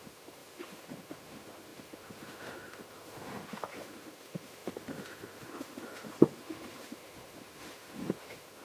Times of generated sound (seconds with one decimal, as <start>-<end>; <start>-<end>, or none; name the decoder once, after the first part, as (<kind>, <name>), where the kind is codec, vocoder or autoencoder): 0.0-8.6 (autoencoder, DAC-VAE)